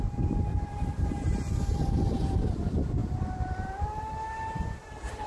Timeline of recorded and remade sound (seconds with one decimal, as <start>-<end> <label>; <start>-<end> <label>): 0.0-0.5 recorded; 0.5-2.0 remade; 2.0-3.0 recorded; 3.0-3.8 remade; 3.8-5.3 recorded